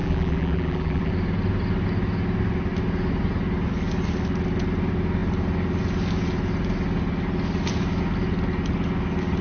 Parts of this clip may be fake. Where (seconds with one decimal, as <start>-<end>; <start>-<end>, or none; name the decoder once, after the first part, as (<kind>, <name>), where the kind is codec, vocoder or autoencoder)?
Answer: 0.0-1.1 (vocoder, BigVGAN v2)